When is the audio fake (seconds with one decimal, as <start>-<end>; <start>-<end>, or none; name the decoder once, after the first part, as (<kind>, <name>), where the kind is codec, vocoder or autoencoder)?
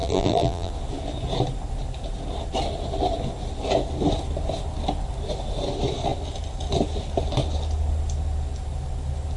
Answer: 0.0-0.7 (vocoder, BigVGAN v2)